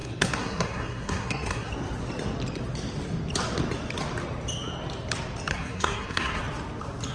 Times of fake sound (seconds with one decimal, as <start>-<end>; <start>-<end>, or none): 0.0-1.7; 5.5-6.4